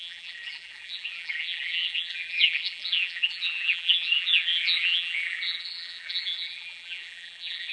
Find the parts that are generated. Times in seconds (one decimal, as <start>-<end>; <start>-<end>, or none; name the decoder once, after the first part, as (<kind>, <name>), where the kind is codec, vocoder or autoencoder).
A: 0.0-7.7 (vocoder, BigVGAN v2)